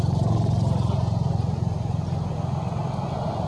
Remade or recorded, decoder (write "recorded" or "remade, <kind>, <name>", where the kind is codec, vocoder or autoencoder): recorded